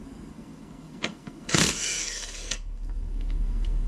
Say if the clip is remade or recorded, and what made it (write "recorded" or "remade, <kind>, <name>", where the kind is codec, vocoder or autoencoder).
remade, codec, SNAC